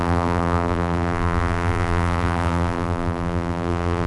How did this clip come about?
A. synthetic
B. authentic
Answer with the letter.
A